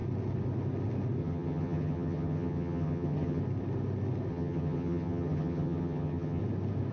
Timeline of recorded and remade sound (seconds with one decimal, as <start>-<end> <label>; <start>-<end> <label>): 0.0-1.2 recorded; 1.2-3.4 remade; 3.4-4.3 recorded; 4.3-6.4 remade; 6.4-6.9 recorded